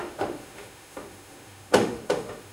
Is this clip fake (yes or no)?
yes